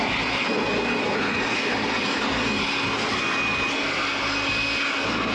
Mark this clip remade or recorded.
recorded